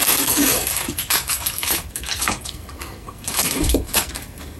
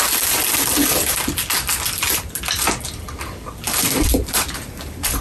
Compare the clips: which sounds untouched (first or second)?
second